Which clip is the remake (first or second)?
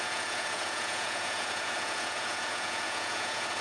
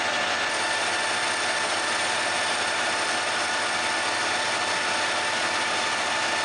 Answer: first